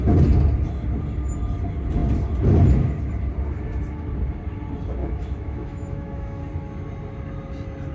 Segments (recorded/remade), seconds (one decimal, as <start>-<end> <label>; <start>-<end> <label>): 0.0-5.0 recorded; 5.0-6.4 remade; 6.4-7.9 recorded

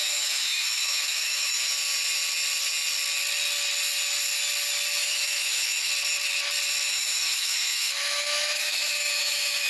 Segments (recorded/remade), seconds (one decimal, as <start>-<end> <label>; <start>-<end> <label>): 0.0-1.7 remade; 1.7-5.0 recorded; 5.0-5.9 remade; 5.9-6.9 recorded; 6.9-9.7 remade